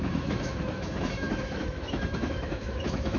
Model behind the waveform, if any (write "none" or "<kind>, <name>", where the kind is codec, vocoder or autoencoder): autoencoder, DAC-VAE